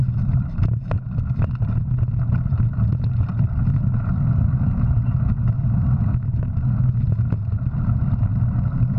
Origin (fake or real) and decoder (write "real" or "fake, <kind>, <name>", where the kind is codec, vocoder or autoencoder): real